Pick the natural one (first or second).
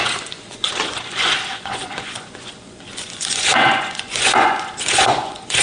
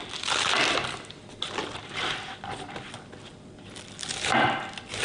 second